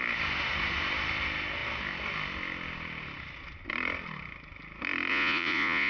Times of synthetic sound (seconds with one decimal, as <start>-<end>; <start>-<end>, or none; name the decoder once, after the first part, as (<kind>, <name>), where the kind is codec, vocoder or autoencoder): 5.1-5.9 (vocoder, Vocos)

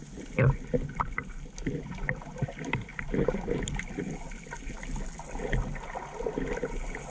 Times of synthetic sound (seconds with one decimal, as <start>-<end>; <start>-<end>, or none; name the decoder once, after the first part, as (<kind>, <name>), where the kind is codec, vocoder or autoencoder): 2.9-3.6 (vocoder, BigVGAN v2)